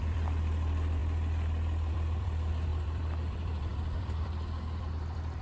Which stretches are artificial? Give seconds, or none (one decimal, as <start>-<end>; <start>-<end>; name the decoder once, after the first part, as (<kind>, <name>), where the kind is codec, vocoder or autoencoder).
0.0-1.0 (vocoder, BigVGAN v2); 1.9-5.4